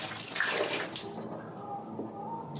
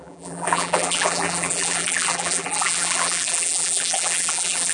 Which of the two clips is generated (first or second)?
second